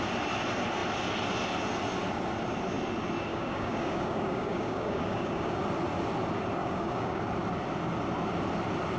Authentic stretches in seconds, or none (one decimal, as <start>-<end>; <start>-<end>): 0.0-3.3; 5.6-6.6; 7.2-9.0